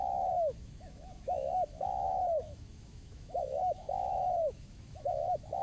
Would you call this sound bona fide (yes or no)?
no